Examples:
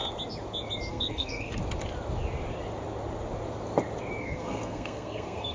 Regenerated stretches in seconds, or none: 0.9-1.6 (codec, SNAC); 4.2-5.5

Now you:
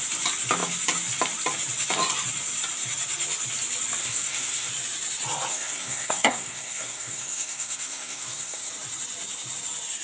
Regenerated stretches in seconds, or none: 4.0-4.7 (codec, SNAC); 5.5-8.7

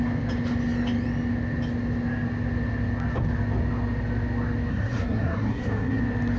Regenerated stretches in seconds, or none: 4.7-6.0 (codec, SNAC)